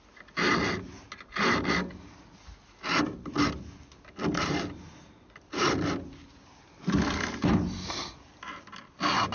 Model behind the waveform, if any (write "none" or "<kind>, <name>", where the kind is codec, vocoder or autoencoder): none